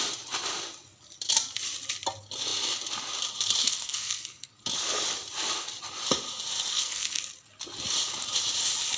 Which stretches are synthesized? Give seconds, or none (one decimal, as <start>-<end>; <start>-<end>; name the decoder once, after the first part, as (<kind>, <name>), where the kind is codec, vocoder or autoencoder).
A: 3.6-4.5 (codec, SNAC); 6.7-7.2

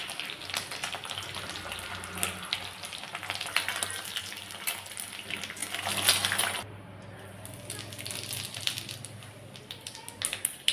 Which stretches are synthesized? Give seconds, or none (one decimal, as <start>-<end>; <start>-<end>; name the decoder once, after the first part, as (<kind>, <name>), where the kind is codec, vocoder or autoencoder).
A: none

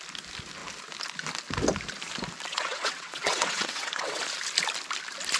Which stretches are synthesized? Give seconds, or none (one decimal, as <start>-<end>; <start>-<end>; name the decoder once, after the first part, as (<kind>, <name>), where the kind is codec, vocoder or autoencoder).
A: 2.5-4.2 (vocoder, WaveNeXt)

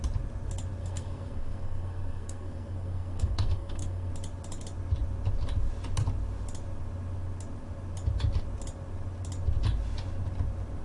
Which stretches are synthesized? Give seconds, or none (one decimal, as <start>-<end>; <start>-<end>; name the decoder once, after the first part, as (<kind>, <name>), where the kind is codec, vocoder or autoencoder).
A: 0.8-4.1 (codec, SNAC)